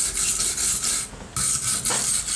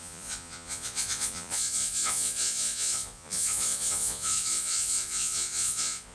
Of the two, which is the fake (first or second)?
second